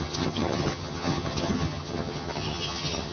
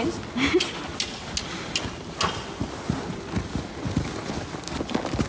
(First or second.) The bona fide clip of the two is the second